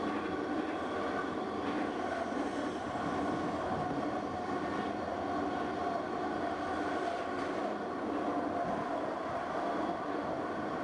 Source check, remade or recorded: recorded